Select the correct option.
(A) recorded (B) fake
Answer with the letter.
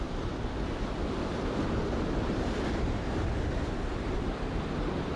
A